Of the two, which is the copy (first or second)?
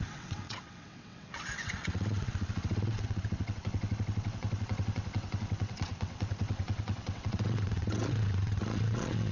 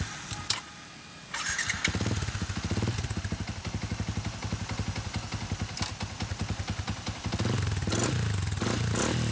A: first